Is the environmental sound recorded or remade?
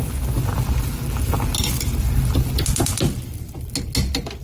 recorded